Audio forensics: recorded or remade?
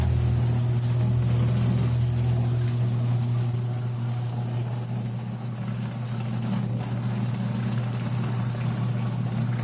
recorded